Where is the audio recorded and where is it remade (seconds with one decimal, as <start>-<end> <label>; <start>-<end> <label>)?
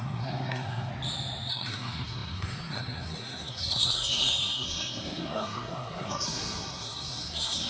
0.0-0.9 remade; 0.9-1.5 recorded; 1.5-7.7 remade